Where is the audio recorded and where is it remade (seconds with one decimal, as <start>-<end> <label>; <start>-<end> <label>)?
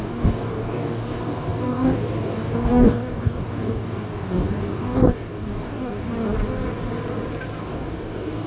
0.0-6.1 remade; 6.1-7.6 recorded; 7.6-8.5 remade